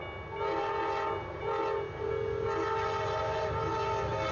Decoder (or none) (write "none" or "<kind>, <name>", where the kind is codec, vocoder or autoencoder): none